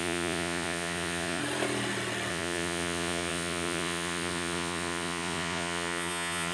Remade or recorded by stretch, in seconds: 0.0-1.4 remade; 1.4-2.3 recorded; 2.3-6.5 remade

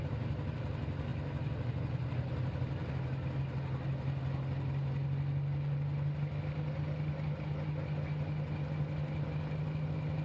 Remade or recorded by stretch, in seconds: 0.0-10.2 recorded

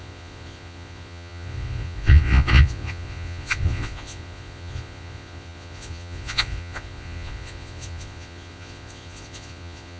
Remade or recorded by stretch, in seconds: 0.0-10.0 remade

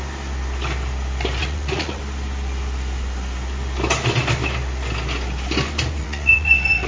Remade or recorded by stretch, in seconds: 0.0-1.4 recorded; 1.4-2.0 remade; 2.0-6.0 recorded; 6.0-6.9 remade

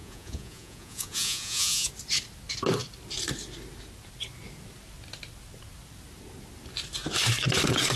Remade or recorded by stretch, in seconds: 0.0-1.9 remade; 1.9-8.0 recorded